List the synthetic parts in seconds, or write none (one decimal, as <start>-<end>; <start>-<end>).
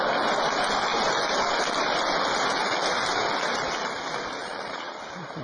4.4-5.0